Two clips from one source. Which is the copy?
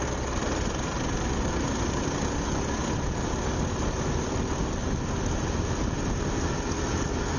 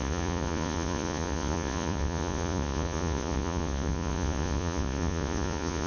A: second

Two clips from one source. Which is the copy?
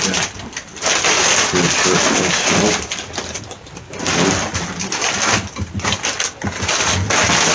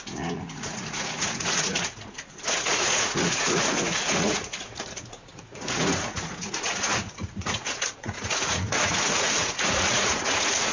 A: second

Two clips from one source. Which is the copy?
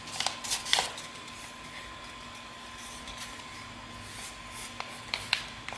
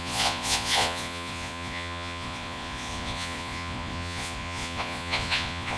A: second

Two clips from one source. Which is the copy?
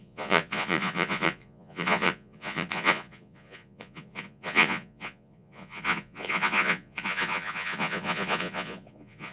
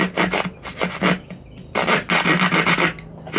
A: first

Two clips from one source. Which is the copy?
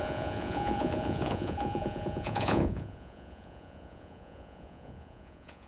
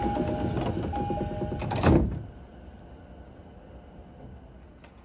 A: first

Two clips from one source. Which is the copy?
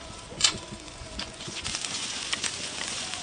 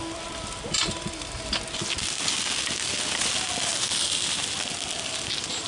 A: first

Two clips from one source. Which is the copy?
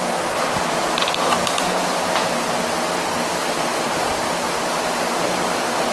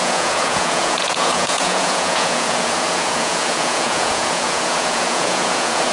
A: second